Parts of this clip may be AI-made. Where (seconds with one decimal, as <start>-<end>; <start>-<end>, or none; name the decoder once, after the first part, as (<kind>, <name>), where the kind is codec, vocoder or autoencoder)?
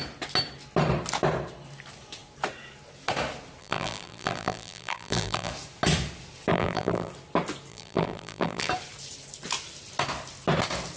3.6-5.5 (vocoder, BigVGAN v2); 6.5-7.1; 7.7-8.7